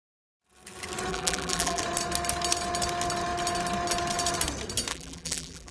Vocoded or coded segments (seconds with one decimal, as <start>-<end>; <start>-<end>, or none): 1.1-1.8; 4.9-5.7